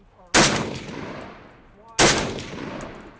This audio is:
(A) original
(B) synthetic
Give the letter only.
A